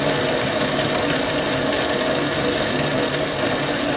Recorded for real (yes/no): yes